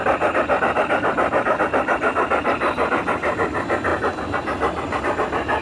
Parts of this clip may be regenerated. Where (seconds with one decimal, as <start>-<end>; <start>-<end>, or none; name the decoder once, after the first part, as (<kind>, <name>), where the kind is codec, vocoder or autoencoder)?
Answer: none